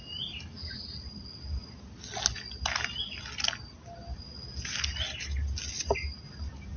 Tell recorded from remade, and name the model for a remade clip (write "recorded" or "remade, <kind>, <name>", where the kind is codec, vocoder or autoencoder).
recorded